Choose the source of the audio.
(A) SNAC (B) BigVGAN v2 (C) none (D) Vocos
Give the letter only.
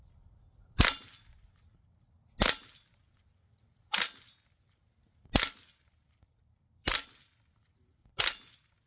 C